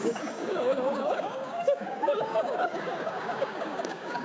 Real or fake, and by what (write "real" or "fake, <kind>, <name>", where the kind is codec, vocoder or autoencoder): fake, codec, DAC